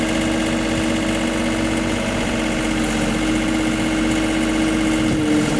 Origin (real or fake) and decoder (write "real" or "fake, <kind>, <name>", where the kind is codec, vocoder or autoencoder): real